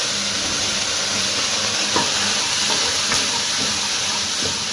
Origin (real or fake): fake